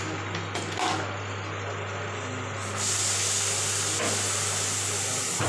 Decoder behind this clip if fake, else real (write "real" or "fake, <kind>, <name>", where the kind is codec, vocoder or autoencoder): real